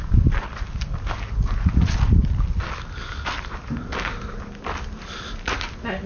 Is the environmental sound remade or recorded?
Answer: recorded